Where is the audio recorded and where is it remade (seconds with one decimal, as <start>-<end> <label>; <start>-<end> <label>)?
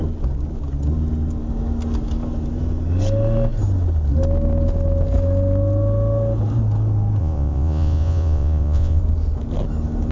0.0-7.2 recorded; 7.2-9.0 remade; 9.0-10.1 recorded